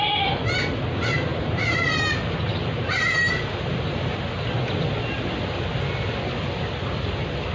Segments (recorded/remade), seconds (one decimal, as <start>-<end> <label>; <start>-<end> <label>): 0.0-1.3 recorded; 1.3-4.2 remade; 4.2-7.5 recorded